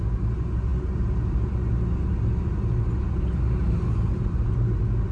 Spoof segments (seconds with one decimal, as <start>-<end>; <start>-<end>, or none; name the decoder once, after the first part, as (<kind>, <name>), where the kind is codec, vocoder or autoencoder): none